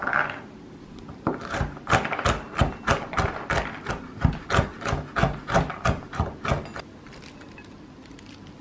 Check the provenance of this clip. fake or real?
real